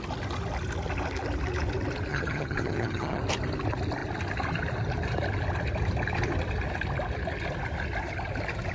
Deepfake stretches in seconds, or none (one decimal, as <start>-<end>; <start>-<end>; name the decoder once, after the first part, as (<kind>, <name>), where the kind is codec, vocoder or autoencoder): 2.1-3.2 (vocoder, HiFi-GAN)